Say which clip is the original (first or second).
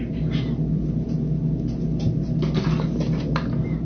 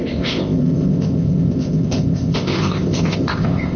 first